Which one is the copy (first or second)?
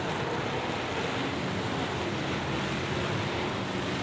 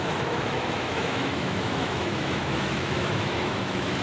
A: second